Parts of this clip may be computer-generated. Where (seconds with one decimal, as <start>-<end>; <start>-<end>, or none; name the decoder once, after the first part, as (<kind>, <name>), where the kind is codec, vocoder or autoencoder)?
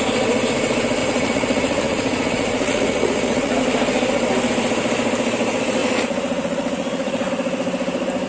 1.0-3.6 (vocoder, Vocos); 5.8-7.3